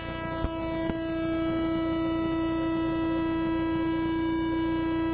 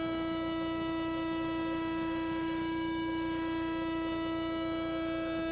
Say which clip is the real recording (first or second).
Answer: first